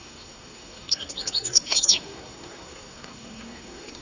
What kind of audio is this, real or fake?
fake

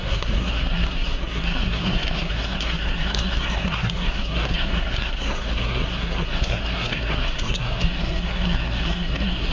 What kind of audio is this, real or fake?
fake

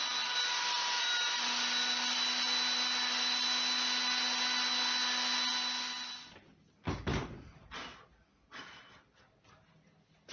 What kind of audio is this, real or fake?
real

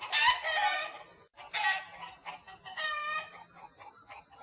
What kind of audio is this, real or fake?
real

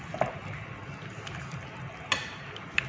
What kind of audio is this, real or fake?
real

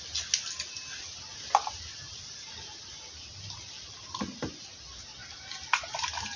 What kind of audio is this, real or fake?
real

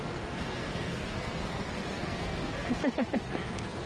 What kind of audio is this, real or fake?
fake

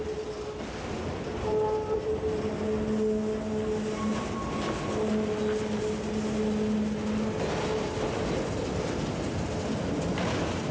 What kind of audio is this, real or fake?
real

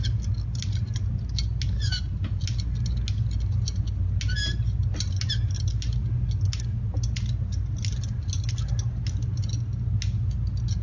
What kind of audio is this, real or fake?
real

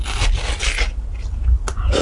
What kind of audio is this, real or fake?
real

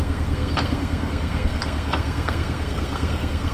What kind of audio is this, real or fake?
fake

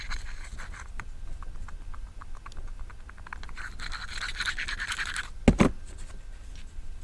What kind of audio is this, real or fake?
real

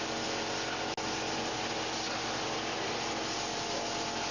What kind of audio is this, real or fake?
real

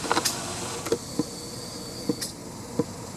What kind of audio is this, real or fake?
real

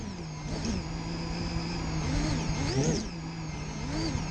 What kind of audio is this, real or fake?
real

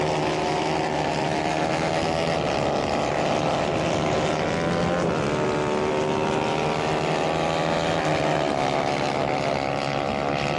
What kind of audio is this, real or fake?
real